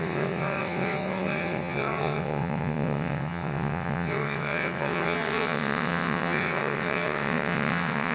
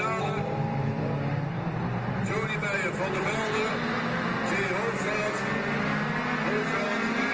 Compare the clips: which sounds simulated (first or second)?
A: first